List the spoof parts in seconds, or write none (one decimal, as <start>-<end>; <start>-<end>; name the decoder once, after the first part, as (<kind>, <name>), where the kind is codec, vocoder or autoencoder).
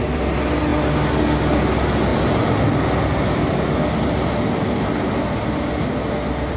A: none